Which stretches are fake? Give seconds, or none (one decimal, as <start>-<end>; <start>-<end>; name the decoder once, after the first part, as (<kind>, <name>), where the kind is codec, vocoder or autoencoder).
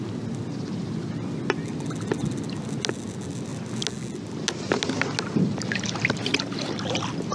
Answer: none